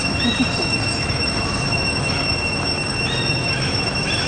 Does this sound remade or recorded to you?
remade